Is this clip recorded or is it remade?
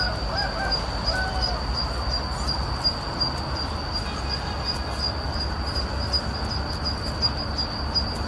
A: recorded